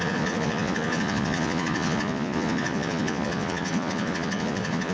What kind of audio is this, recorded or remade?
remade